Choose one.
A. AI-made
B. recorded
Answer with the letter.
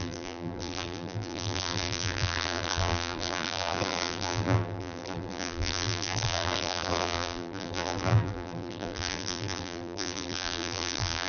A